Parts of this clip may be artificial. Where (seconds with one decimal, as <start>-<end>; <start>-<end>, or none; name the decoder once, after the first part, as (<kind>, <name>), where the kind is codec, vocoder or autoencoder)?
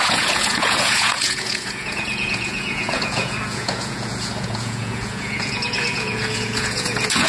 0.0-7.3 (vocoder, Vocos)